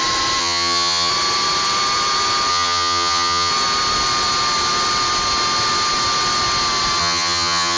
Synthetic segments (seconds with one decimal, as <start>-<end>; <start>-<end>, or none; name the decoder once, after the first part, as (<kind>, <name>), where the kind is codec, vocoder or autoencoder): 0.4-1.1 (vocoder, HiFi-GAN); 2.5-3.5; 7.0-7.8